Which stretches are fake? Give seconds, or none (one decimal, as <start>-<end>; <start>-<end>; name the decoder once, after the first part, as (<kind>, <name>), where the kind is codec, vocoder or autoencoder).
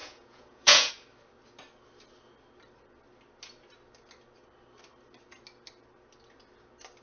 0.0-0.9 (vocoder, Vocos)